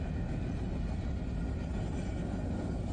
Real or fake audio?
real